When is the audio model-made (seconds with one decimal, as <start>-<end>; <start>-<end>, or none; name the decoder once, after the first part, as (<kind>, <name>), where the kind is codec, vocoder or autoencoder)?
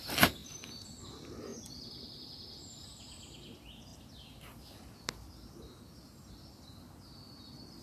0.4-1.0 (vocoder, BigVGAN v2); 1.5-3.0